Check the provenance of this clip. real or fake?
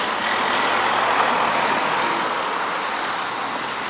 real